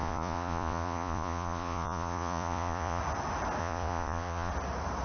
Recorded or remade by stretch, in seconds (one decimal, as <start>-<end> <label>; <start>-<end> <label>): 0.0-3.0 remade; 3.0-3.6 recorded; 3.6-4.5 remade; 4.5-5.0 recorded